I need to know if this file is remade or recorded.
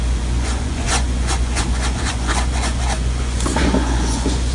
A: remade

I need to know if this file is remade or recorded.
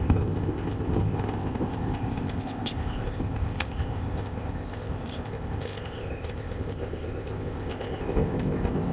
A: remade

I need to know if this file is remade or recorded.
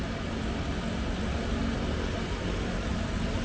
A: recorded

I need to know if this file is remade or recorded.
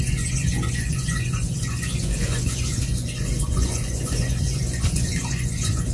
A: remade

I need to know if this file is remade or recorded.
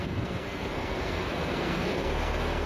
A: remade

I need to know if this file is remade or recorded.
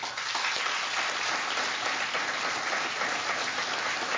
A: recorded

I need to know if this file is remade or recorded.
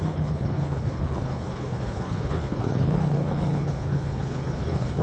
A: remade